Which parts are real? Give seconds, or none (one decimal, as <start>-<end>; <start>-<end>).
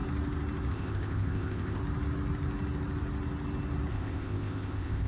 0.0-0.7; 1.8-3.9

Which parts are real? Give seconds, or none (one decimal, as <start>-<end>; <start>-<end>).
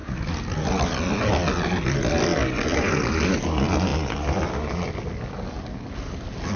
0.0-6.6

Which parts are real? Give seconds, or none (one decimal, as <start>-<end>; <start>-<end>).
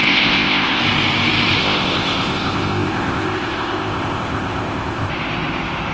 0.8-1.6; 5.1-5.9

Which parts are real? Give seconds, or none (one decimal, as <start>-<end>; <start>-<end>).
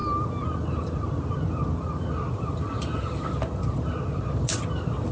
0.0-5.1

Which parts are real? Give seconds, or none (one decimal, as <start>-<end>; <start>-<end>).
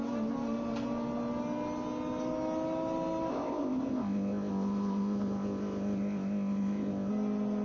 0.0-3.3; 7.1-7.6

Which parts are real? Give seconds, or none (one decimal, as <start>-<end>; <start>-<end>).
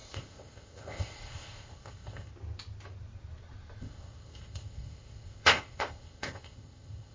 2.3-3.8